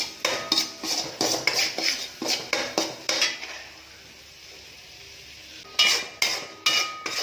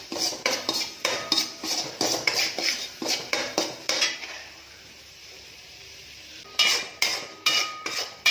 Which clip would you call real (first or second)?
first